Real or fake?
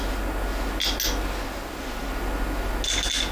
real